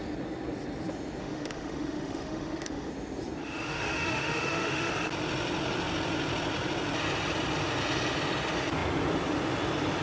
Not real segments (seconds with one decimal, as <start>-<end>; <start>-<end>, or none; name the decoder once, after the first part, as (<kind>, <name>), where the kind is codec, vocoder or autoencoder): 1.2-2.9 (autoencoder, DAC-VAE); 3.4-4.9